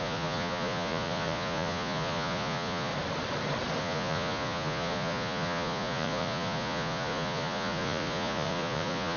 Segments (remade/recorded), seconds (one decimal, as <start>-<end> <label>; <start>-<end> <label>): 0.0-2.9 remade; 2.9-3.8 recorded; 3.8-9.2 remade